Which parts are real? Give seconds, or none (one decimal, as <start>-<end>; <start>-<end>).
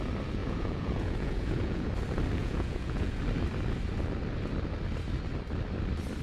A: 0.0-0.4; 1.9-2.4; 3.2-6.2